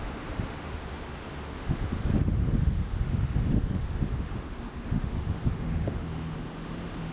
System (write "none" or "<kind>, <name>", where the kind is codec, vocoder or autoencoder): autoencoder, DAC-VAE